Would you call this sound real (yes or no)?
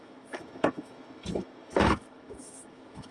no